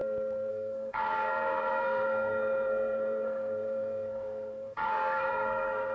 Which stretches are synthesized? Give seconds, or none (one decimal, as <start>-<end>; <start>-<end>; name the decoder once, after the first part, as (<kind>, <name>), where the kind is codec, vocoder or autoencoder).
0.5-5.9 (codec, SNAC)